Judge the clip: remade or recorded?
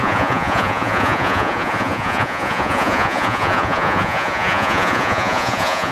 remade